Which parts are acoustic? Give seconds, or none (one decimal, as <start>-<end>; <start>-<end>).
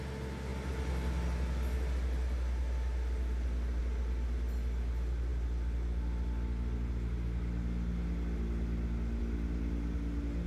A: 0.0-10.5